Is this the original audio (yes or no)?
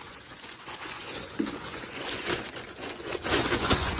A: no